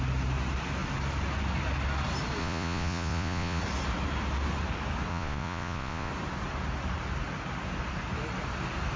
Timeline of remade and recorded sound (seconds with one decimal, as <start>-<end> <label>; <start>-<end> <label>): 0.0-2.4 recorded; 2.4-3.6 remade; 3.6-5.1 recorded; 5.1-6.1 remade; 6.1-9.0 recorded